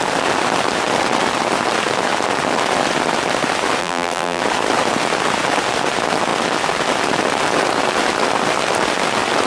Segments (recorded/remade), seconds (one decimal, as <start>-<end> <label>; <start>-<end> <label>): 0.0-3.8 recorded; 3.8-4.4 remade; 4.4-9.5 recorded